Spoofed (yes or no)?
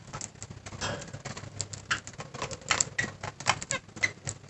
no